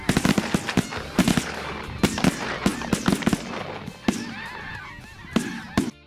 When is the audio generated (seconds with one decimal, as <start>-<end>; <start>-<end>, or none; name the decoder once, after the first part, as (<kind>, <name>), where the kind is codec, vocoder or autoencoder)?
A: none